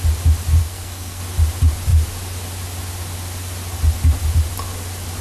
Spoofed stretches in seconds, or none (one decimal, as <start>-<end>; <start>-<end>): 0.6-1.2